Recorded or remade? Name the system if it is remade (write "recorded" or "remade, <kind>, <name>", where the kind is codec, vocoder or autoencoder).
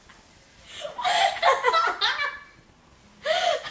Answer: recorded